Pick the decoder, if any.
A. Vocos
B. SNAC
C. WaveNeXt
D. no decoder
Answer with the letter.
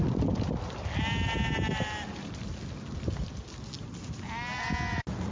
D